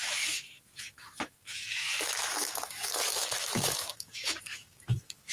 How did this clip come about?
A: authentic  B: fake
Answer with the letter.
B